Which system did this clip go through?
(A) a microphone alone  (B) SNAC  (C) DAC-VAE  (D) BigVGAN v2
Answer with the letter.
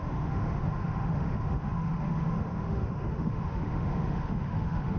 C